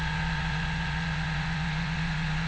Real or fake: fake